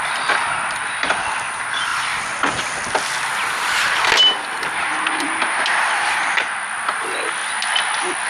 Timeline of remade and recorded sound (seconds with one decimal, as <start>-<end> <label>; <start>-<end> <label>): 0.0-8.3 recorded